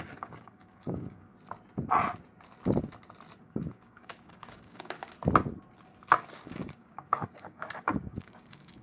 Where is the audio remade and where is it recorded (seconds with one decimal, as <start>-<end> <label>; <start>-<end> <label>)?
0.0-1.3 remade; 1.3-3.4 recorded; 3.4-5.0 remade; 5.0-6.3 recorded; 6.3-8.8 remade